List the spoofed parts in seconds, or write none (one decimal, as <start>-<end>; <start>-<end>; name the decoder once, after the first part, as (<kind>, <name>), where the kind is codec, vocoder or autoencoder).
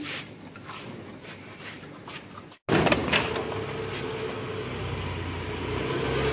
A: none